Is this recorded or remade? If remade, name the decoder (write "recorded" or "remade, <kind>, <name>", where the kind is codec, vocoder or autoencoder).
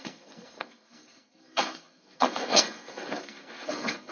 remade, codec, SNAC